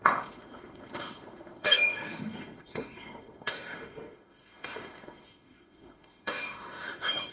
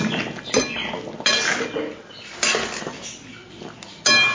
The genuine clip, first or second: second